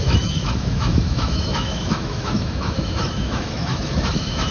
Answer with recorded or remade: remade